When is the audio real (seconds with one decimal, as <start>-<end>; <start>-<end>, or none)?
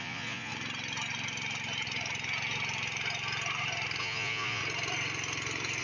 0.5-4.0; 4.6-5.8